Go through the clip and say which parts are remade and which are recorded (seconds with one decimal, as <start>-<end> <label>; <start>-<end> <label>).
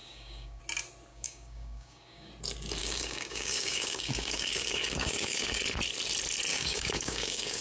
0.0-0.6 remade; 0.6-1.1 recorded; 1.1-2.3 remade; 2.3-2.8 recorded; 2.8-5.6 remade; 5.6-6.5 recorded; 6.5-7.6 remade